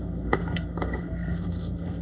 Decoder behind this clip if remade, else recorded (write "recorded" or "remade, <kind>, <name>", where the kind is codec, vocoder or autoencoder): remade, codec, SNAC